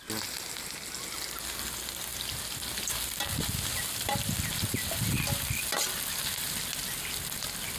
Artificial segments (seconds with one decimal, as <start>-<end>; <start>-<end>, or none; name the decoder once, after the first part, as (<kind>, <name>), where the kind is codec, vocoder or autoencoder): none